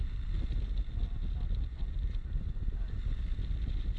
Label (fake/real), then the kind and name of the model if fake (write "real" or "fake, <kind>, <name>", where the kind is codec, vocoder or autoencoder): real